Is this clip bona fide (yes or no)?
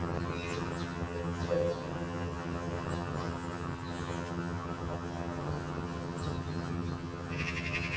no